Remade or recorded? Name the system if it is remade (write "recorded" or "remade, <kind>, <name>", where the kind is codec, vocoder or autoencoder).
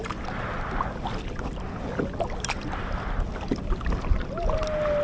recorded